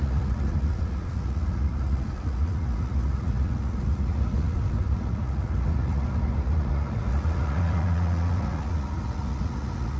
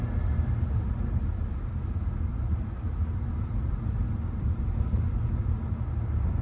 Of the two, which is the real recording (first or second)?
second